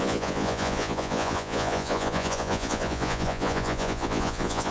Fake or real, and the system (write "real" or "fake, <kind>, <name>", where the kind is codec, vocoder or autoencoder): fake, vocoder, Vocos